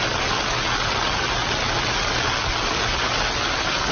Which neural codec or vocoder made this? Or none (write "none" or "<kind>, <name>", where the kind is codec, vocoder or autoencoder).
none